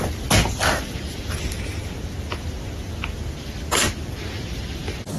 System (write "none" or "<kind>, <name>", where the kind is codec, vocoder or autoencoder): none